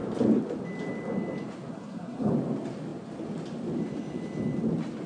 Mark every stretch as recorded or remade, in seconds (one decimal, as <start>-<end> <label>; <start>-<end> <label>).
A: 0.0-1.7 recorded; 1.7-2.3 remade; 2.3-5.1 recorded